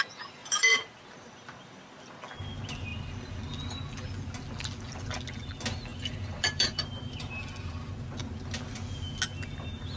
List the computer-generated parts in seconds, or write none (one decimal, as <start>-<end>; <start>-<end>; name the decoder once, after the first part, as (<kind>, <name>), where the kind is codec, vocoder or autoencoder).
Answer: 0.4-1.8 (vocoder, BigVGAN v2); 5.9-7.3